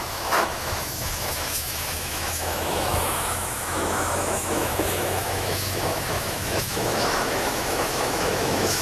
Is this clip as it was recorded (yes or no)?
no